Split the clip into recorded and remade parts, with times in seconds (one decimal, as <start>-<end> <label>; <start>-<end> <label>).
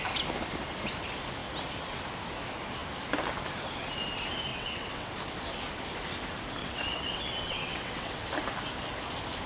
0.0-4.5 recorded; 4.5-5.1 remade; 5.1-6.6 recorded; 6.6-8.2 remade; 8.2-9.5 recorded